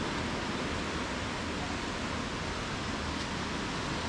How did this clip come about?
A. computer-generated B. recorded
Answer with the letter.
B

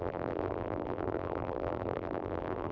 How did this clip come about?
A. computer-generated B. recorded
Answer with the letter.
A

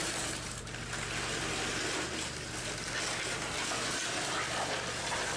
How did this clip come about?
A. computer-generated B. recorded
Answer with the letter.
B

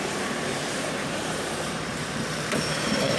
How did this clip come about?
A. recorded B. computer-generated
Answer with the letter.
B